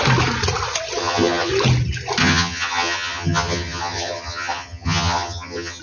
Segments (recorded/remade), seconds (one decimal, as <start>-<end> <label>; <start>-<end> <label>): 0.0-1.0 recorded; 1.0-1.5 remade; 1.5-2.2 recorded; 2.2-5.8 remade